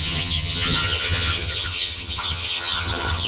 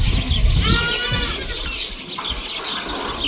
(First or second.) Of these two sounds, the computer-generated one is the first